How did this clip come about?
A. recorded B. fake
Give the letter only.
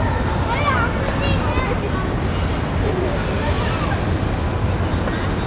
A